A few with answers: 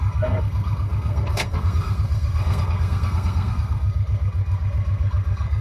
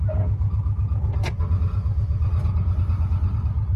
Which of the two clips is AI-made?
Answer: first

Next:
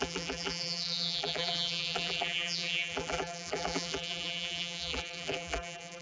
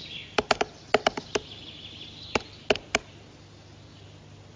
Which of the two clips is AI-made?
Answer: first